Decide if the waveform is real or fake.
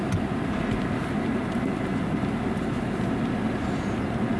real